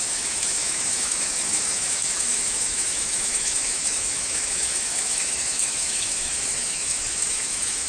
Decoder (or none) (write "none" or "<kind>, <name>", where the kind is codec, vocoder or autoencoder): autoencoder, DAC-VAE